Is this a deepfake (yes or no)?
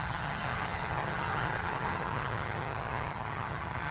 yes